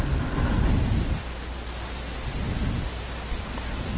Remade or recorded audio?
recorded